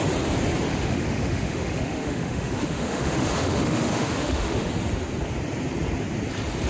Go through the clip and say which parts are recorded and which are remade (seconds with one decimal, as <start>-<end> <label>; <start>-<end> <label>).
0.0-0.7 recorded; 0.7-4.7 remade; 4.7-6.7 recorded